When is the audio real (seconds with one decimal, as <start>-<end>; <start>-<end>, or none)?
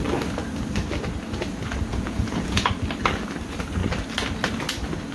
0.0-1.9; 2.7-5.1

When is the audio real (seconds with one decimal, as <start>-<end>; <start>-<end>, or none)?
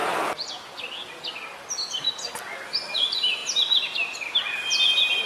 0.0-3.4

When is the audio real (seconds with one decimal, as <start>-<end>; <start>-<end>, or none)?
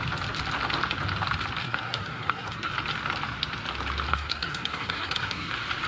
0.0-1.6; 2.7-4.1; 5.5-5.9